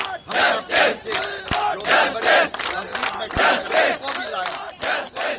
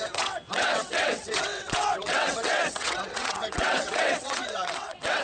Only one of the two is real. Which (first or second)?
first